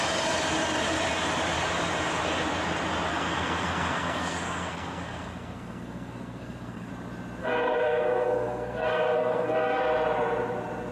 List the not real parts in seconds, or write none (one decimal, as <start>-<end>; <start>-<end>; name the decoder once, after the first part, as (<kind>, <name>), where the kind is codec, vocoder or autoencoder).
3.1-6.9 (codec, SNAC); 7.4-9.8